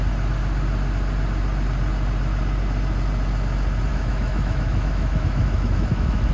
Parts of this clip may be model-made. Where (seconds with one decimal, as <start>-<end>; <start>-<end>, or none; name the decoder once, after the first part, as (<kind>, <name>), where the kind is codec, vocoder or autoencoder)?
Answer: 3.9-6.3 (autoencoder, DAC-VAE)

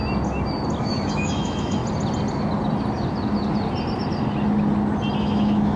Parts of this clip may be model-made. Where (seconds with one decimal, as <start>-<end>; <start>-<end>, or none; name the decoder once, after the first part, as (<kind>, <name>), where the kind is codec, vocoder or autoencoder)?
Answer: 0.8-1.8 (autoencoder, DAC-VAE); 5.2-5.8

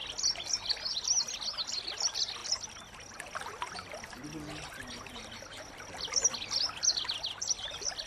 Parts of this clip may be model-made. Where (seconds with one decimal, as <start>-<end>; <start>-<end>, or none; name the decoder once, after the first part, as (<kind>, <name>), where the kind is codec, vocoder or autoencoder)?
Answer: none